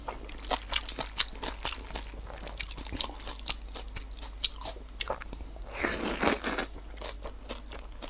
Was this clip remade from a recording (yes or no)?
no